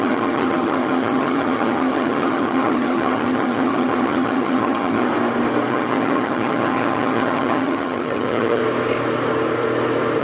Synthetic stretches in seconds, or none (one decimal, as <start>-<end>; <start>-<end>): 0.0-5.1; 5.7-8.6